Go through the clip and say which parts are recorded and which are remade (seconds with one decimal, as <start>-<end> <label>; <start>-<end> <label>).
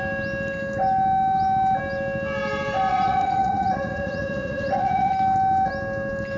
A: 0.0-2.9 recorded; 2.9-5.1 remade; 5.1-6.4 recorded